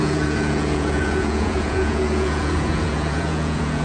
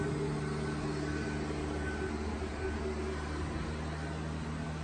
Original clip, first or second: second